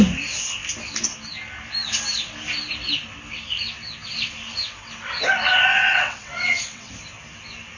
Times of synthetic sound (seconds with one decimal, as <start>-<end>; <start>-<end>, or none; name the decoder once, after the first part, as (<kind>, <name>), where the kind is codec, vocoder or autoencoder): 5.7-6.9 (vocoder, WaveNeXt)